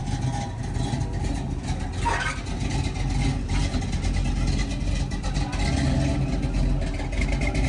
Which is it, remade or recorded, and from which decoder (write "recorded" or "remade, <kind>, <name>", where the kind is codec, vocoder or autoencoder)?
recorded